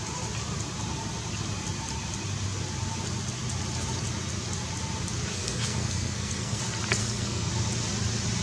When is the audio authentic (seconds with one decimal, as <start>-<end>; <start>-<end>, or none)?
0.0-5.3; 6.6-7.0; 7.5-8.4